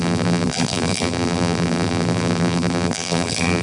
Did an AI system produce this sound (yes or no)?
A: yes